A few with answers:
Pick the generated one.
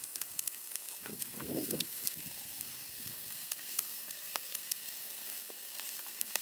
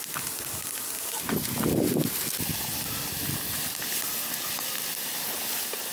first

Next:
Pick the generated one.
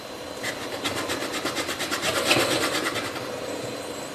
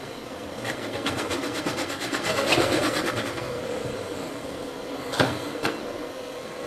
second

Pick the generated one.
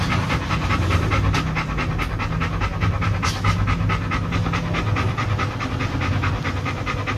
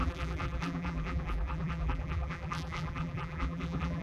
second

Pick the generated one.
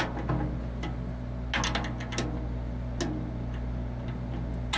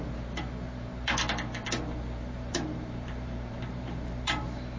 second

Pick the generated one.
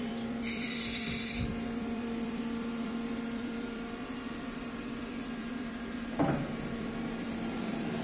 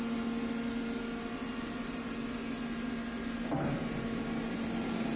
first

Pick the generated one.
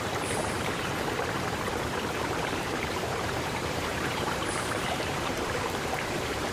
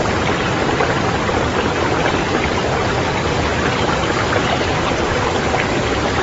first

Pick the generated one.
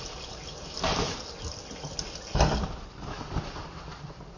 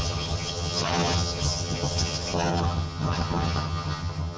second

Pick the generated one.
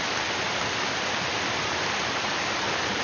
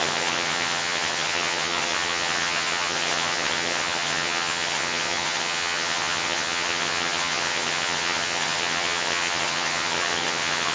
second